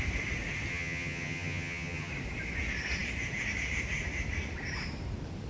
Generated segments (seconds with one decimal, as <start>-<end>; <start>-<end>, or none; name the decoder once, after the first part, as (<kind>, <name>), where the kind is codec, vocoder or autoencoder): 0.7-2.1 (vocoder, HiFi-GAN)